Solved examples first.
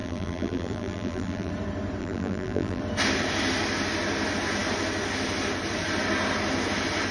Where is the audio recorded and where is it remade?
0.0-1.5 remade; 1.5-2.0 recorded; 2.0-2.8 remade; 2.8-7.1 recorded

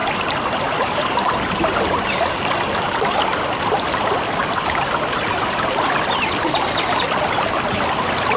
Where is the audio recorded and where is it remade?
0.0-8.4 recorded

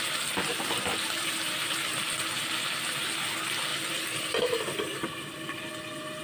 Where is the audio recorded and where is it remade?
0.0-0.5 recorded; 0.5-2.0 remade; 2.0-3.7 recorded; 3.7-5.7 remade; 5.7-6.2 recorded

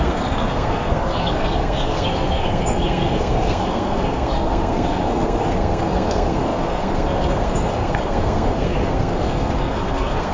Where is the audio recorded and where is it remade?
0.0-10.3 remade